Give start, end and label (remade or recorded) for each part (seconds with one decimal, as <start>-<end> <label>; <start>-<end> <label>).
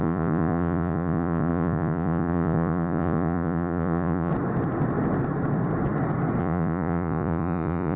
0.0-4.3 remade; 4.3-6.4 recorded; 6.4-8.0 remade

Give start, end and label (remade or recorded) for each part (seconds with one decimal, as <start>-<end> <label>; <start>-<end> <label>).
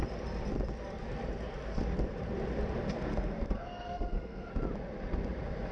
0.0-2.9 recorded; 2.9-4.5 remade; 4.5-5.7 recorded